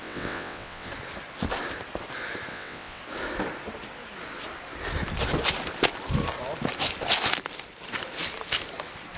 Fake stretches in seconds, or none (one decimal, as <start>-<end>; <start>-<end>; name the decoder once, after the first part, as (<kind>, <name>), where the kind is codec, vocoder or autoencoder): 0.0-0.9 (vocoder, WaveNeXt); 2.5-3.0